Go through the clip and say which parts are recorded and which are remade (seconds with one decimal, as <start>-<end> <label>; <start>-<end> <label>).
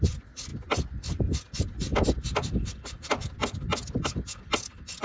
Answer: 0.0-5.0 recorded